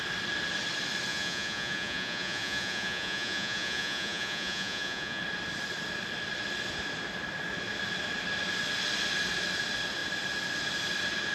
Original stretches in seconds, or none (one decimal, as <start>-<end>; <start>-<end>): 0.0-1.1; 5.2-11.3